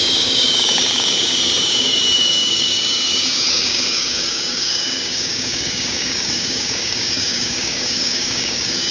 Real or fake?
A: fake